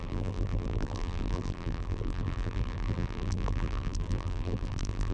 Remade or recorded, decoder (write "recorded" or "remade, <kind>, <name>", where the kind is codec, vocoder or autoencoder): remade, vocoder, BigVGAN v2